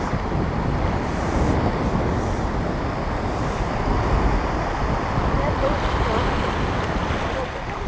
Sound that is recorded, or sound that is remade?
recorded